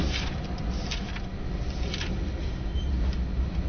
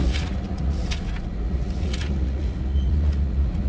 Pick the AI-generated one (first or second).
second